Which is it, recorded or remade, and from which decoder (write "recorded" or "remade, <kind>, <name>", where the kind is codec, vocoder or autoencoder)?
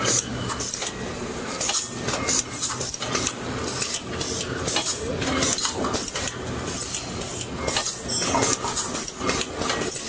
recorded